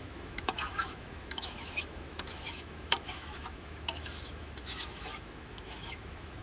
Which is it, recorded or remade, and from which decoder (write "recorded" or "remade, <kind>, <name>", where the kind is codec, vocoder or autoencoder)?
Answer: remade, autoencoder, DAC-VAE